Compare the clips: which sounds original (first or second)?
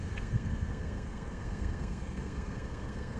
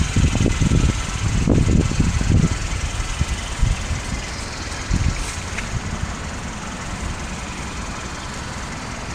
second